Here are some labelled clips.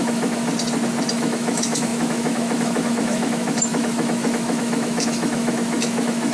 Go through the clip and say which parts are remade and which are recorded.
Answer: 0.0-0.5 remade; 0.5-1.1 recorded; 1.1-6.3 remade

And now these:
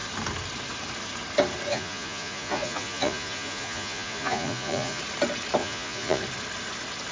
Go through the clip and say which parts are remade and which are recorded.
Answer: 0.0-1.7 recorded; 1.7-5.0 remade; 5.0-5.6 recorded; 5.6-6.2 remade; 6.2-7.1 recorded